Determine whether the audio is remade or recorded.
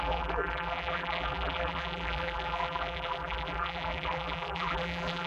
remade